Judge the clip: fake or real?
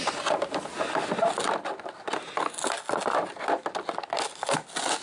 real